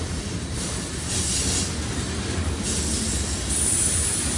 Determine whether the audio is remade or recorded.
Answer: recorded